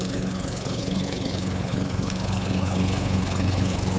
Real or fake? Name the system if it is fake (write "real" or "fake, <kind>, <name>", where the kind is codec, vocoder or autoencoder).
fake, codec, HILCodec